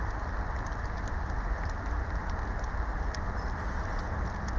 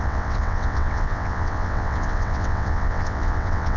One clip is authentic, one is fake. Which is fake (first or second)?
second